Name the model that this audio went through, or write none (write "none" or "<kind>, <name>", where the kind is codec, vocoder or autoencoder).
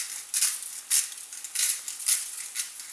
none